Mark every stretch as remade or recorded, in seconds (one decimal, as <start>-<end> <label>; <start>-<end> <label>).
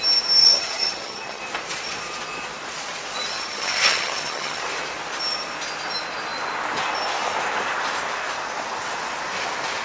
0.0-0.4 recorded; 0.4-1.4 remade; 1.4-3.3 recorded; 3.3-4.6 remade; 4.6-9.8 recorded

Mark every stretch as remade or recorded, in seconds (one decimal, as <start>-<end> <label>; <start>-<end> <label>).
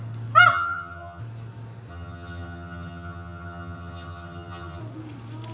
0.0-0.5 recorded; 0.5-1.2 remade; 1.2-1.9 recorded; 1.9-4.8 remade; 4.8-5.5 recorded